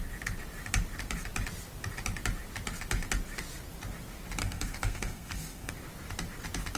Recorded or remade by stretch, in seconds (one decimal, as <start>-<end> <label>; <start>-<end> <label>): 0.0-4.4 recorded; 4.4-5.7 remade; 5.7-6.8 recorded